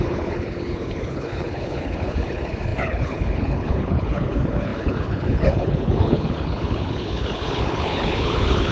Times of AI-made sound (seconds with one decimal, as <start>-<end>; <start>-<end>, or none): 0.0-8.7